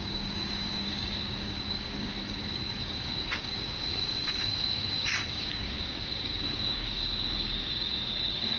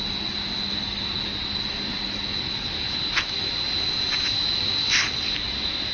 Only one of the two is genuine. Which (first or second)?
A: second